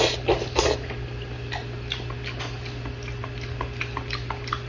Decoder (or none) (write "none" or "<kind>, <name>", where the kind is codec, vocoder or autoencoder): none